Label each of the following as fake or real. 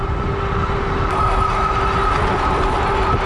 real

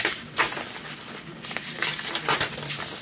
real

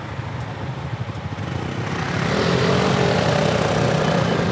real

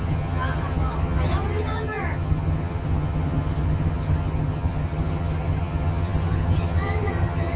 fake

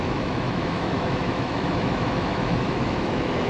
fake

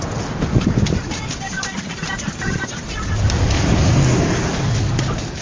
real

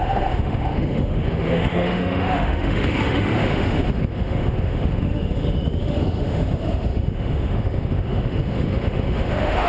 fake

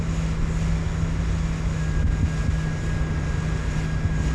real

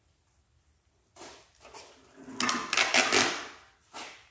real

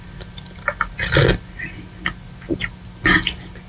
real